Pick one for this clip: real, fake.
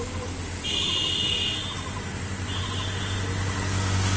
real